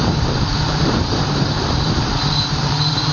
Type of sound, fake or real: fake